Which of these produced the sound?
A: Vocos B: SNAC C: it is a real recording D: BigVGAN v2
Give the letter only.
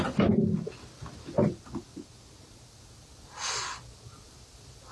C